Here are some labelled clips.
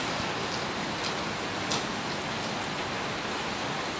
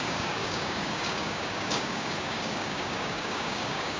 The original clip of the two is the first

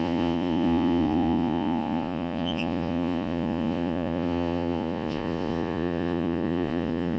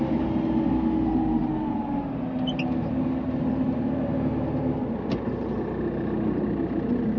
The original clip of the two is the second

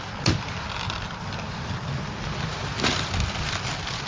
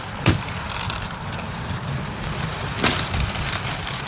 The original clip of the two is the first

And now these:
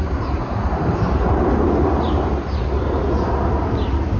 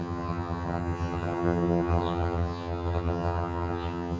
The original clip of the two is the first